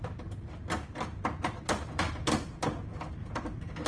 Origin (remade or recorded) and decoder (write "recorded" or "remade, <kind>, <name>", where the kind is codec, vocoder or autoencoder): remade, vocoder, BigVGAN v2